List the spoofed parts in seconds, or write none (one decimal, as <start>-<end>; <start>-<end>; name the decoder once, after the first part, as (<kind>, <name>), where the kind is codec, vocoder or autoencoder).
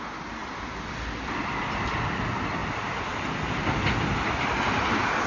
none